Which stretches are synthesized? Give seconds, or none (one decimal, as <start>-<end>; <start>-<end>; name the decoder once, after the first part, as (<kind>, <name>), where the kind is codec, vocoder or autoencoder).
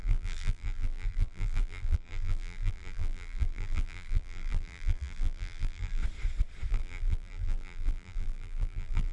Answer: 0.0-6.0 (vocoder, BigVGAN v2); 6.7-9.1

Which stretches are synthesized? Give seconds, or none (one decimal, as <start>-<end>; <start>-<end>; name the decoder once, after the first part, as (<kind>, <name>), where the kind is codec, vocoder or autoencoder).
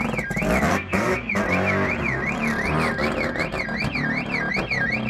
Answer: 0.7-1.3 (codec, SNAC)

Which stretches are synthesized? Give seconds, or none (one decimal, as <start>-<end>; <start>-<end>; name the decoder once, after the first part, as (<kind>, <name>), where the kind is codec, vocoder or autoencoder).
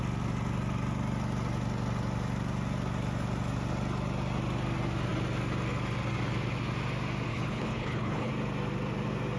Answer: 7.3-8.3 (codec, HILCodec)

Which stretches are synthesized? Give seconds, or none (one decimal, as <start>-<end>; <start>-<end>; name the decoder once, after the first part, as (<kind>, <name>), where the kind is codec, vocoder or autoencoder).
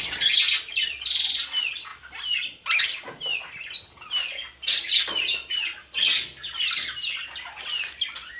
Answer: none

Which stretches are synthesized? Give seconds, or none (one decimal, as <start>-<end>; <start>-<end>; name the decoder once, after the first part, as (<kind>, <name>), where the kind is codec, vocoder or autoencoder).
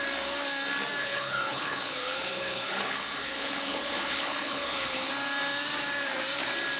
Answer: 1.0-5.1 (codec, HILCodec)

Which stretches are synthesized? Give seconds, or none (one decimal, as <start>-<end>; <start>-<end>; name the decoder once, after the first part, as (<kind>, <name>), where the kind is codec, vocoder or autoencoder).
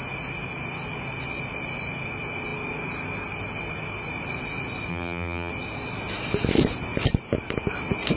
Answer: 4.9-5.5 (vocoder, BigVGAN v2)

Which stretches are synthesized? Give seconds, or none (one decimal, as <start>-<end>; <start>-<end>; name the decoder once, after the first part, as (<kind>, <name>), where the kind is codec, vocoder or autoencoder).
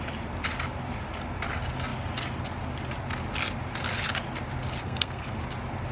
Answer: 4.8-5.4 (codec, SNAC)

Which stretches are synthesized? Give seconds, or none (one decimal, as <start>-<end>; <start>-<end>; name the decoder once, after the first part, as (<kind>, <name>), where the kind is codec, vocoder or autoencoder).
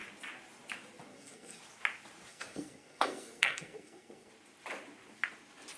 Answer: 1.1-1.6 (codec, SNAC); 2.3-4.3